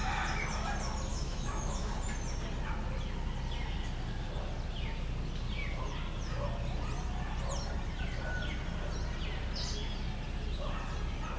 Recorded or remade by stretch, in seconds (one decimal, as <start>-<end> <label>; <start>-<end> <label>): 0.0-1.1 recorded; 1.1-1.9 remade; 1.9-11.4 recorded